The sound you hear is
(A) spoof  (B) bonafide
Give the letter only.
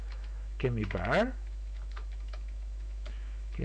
A